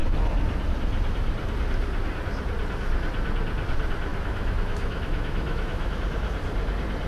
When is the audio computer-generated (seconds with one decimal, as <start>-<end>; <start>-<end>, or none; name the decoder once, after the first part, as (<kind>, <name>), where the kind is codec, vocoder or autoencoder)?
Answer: 4.1-6.0 (autoencoder, DAC-VAE)